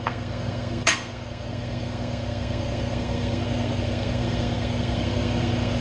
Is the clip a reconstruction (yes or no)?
yes